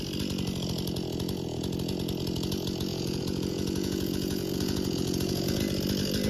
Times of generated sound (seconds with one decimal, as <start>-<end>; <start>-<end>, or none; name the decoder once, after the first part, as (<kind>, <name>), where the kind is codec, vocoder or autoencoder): 2.9-5.6 (vocoder, Vocos)